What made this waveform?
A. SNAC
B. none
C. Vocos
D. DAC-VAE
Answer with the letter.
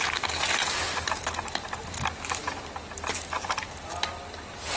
B